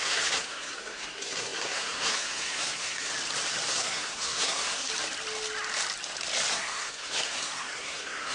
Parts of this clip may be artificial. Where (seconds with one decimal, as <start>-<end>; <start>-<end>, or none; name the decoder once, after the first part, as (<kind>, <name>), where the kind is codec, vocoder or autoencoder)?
0.0-3.1 (codec, SNAC); 3.7-4.9; 6.5-8.3